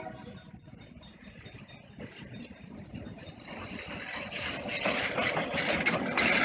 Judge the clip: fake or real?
fake